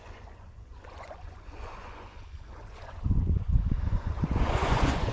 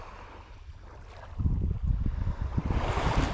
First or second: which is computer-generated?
first